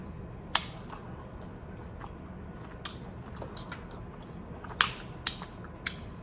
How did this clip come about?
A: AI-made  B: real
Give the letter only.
B